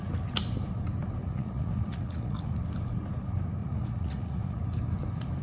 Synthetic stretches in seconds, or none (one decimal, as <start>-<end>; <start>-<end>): 1.2-2.6; 3.6-4.6